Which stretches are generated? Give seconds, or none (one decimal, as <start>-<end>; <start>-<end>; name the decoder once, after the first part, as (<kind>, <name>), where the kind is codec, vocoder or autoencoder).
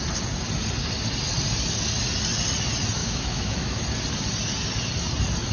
3.0-3.8 (autoencoder, DAC-VAE)